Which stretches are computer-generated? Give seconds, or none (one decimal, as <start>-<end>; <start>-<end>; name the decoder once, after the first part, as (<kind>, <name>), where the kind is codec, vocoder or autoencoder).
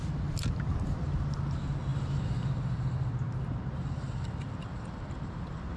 none